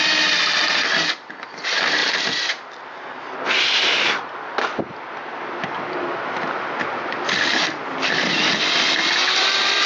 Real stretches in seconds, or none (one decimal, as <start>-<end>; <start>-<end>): 0.0-9.9